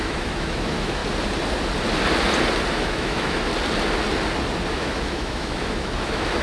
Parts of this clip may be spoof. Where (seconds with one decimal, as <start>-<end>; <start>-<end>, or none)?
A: 0.0-1.0; 2.7-3.5; 4.7-6.4